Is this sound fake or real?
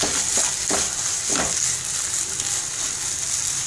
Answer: real